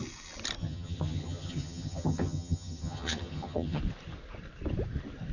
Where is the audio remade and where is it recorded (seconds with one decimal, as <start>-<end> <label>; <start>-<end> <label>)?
0.0-0.6 recorded; 0.6-3.8 remade; 3.8-5.3 recorded